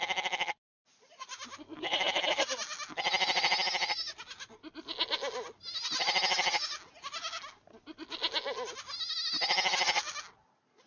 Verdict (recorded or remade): recorded